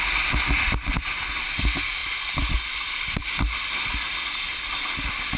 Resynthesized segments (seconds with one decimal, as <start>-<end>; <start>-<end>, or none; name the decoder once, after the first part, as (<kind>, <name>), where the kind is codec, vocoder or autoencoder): none